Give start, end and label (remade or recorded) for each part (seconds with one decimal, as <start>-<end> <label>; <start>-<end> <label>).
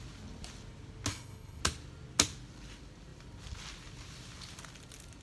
0.0-1.1 recorded; 1.1-1.6 remade; 1.6-5.2 recorded